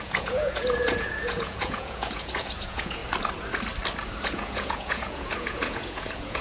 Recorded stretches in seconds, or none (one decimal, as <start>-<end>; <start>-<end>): 3.0-4.2